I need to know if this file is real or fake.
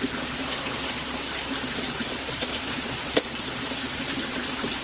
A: real